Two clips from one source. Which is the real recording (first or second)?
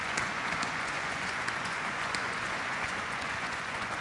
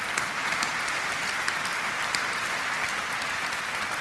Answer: second